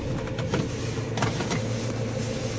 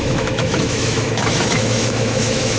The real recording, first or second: first